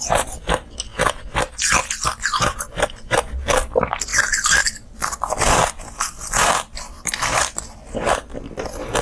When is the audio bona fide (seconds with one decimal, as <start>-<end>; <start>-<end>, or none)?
0.0-9.0